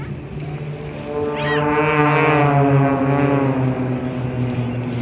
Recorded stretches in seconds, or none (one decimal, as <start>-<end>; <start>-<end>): 0.0-5.0